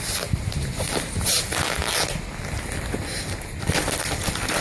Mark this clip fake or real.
real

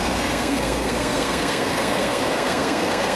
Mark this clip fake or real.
fake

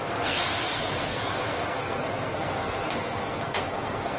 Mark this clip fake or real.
fake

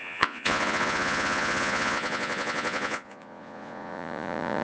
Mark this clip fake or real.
fake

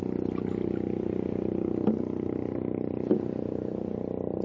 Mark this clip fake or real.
real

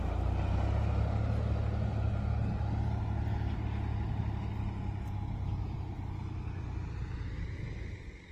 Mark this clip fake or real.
real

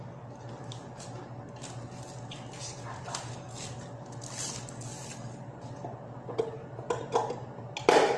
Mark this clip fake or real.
real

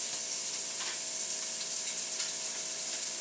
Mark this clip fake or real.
real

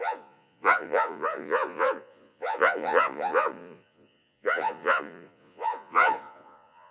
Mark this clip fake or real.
fake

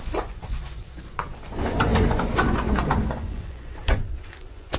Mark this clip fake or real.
fake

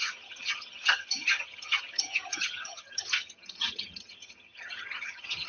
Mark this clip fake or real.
fake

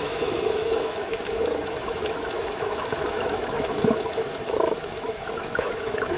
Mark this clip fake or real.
fake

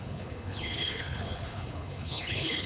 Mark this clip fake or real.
fake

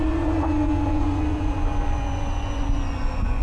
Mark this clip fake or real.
fake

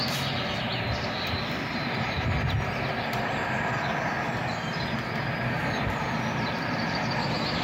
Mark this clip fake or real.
real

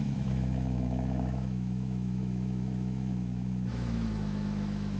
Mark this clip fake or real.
fake